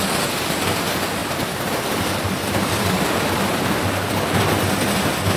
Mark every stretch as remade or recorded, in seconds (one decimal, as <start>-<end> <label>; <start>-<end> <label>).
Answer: 0.0-1.2 recorded; 1.2-4.4 remade; 4.4-5.4 recorded